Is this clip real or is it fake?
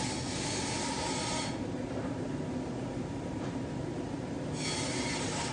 real